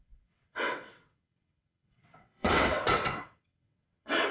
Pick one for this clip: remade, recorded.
remade